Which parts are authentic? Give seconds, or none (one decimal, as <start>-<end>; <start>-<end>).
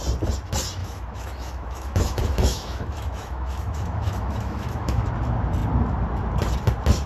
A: 0.0-0.8; 5.1-7.1